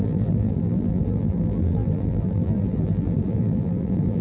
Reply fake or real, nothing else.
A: fake